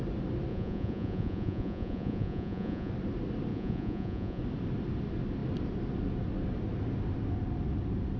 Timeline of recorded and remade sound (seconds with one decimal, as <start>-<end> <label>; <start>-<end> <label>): 0.0-0.5 recorded; 0.5-2.9 remade; 2.9-3.5 recorded; 3.5-4.4 remade; 4.4-8.2 recorded